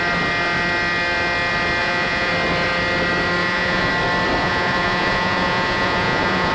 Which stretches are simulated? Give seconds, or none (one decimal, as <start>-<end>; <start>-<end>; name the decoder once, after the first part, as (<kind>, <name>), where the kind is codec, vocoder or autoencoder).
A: 1.8-2.3 (vocoder, Vocos); 3.4-3.9; 4.4-6.5